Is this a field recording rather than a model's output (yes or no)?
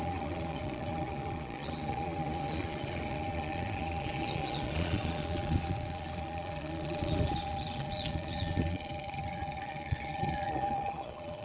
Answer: no